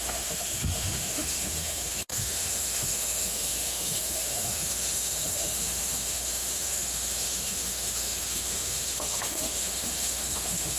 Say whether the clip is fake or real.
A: fake